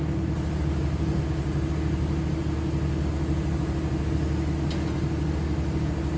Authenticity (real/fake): real